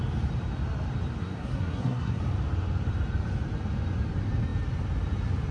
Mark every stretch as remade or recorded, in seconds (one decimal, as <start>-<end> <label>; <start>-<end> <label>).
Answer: 0.0-1.2 recorded; 1.2-2.2 remade; 2.2-5.5 recorded